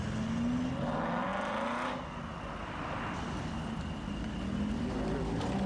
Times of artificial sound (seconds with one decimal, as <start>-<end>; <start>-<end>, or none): none